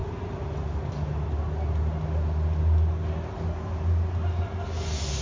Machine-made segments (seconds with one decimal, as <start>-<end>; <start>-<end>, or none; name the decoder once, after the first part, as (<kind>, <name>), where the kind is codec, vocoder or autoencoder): none